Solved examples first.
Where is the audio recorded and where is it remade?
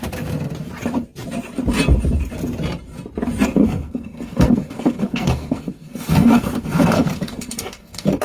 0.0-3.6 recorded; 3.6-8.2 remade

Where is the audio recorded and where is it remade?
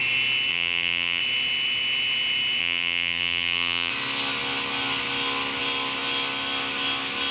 0.0-0.5 recorded; 0.5-1.2 remade; 1.2-2.6 recorded; 2.6-3.9 remade; 3.9-7.3 recorded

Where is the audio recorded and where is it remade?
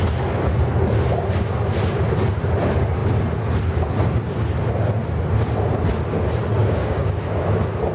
0.0-6.6 recorded; 6.6-7.1 remade; 7.1-7.9 recorded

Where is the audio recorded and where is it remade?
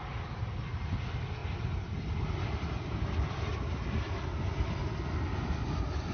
0.0-6.1 recorded